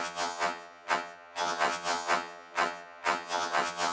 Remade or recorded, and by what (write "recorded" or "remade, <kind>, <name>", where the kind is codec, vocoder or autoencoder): remade, vocoder, HiFi-GAN